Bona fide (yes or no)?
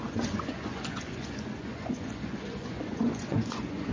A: no